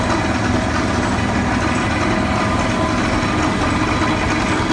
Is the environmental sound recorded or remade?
recorded